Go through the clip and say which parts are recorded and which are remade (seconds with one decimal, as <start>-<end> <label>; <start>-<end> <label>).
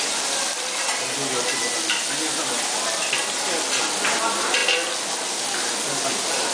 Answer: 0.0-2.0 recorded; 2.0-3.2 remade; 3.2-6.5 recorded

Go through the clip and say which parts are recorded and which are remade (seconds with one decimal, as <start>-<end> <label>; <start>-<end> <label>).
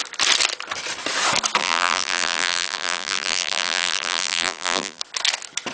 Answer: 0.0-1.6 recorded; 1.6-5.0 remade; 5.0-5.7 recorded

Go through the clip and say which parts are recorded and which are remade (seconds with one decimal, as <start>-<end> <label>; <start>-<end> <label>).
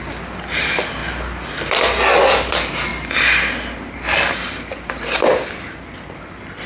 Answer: 0.0-1.0 recorded; 1.0-1.6 remade; 1.6-6.7 recorded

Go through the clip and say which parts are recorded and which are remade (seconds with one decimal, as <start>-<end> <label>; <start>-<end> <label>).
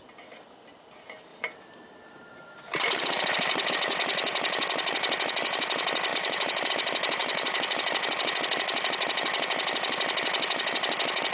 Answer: 0.0-1.3 recorded; 1.3-3.7 remade; 3.7-6.1 recorded; 6.1-6.7 remade; 6.7-7.2 recorded; 7.2-7.8 remade; 7.8-11.3 recorded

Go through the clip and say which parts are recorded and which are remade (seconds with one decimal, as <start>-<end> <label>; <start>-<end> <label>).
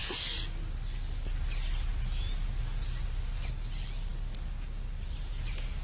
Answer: 0.0-5.8 recorded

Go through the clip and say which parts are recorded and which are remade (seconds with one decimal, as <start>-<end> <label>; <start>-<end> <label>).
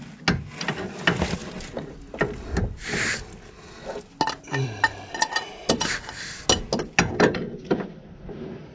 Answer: 0.0-1.4 recorded; 1.4-2.0 remade; 2.0-8.7 recorded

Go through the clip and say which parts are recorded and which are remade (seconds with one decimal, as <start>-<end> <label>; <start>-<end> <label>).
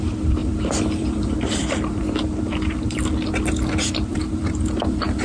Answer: 0.0-0.4 recorded; 0.4-3.0 remade; 3.0-4.1 recorded; 4.1-5.2 remade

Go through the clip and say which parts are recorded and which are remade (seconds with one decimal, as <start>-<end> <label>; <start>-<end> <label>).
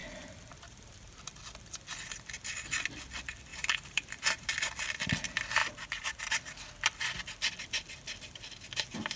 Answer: 0.0-1.2 remade; 1.2-3.5 recorded; 3.5-4.5 remade; 4.5-5.6 recorded; 5.6-6.3 remade; 6.3-9.2 recorded